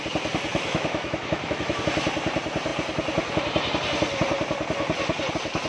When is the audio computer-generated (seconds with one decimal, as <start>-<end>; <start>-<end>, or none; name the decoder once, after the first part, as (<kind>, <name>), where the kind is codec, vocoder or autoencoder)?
0.5-1.8 (autoencoder, DAC-VAE)